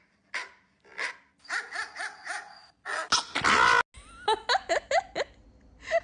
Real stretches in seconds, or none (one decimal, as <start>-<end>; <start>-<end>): 0.0-6.0